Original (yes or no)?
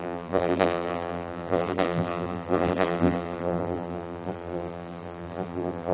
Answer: no